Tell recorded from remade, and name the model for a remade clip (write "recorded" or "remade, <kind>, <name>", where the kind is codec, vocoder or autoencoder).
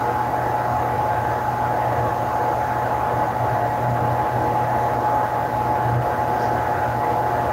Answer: recorded